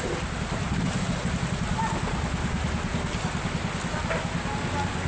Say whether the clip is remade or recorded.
recorded